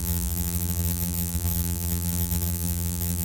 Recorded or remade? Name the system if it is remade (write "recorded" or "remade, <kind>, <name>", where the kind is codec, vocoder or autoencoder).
remade, vocoder, BigVGAN v2